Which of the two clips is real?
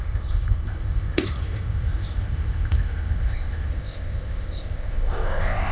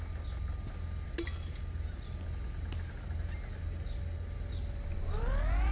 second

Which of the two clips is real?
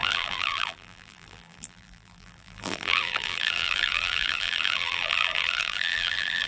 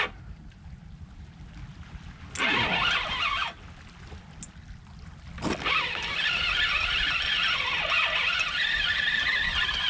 second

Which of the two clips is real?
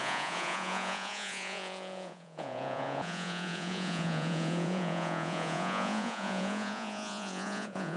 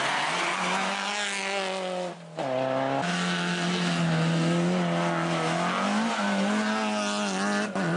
second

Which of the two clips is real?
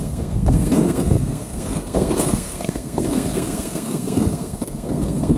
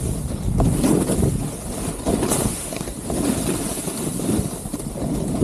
second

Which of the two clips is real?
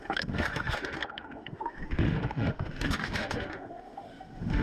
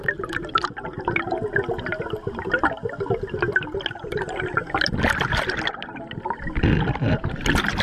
second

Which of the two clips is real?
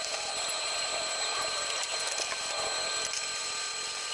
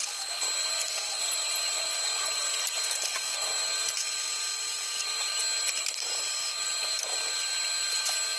second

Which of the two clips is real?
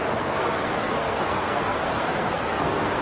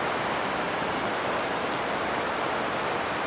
second